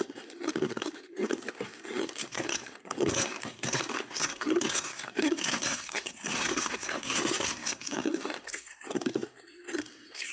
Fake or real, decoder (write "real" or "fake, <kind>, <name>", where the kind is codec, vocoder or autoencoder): fake, codec, SNAC